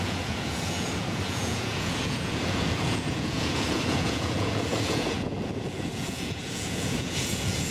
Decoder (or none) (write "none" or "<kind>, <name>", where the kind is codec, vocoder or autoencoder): vocoder, Vocos